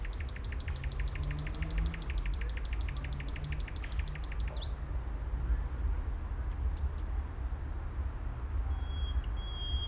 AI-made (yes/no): no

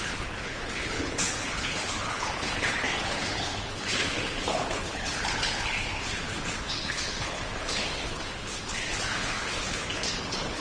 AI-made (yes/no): yes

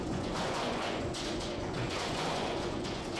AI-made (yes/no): yes